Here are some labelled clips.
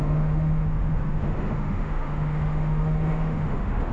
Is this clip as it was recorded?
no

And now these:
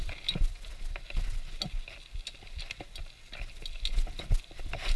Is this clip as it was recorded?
yes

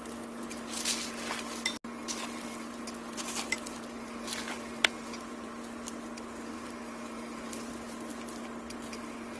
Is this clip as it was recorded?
yes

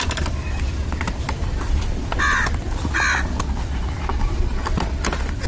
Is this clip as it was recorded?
yes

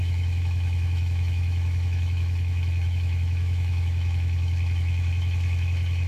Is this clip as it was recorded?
no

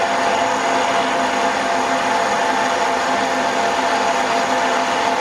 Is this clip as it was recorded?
yes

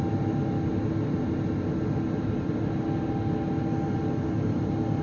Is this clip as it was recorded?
yes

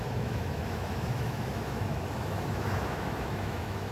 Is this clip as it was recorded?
no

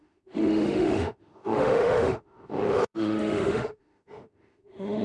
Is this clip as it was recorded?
no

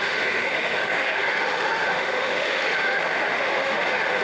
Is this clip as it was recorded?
no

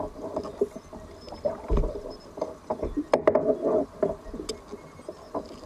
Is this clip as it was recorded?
yes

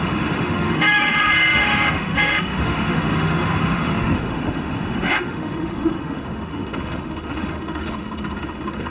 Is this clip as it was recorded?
no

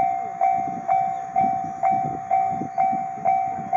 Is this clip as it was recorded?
no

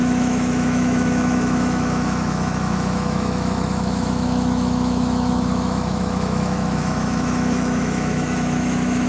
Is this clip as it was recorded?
no